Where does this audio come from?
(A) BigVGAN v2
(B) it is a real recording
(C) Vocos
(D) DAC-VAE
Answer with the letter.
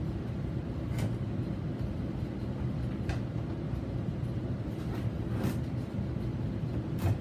B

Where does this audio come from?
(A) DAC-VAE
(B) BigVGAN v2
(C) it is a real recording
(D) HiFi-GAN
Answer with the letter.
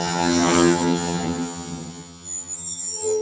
D